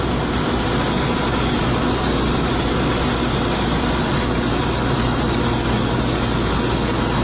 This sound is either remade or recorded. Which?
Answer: recorded